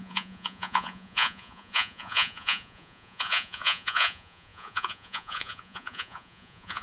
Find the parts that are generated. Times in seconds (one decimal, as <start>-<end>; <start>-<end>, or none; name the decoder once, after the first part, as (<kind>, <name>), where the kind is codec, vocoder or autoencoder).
0.0-6.8 (vocoder, Vocos)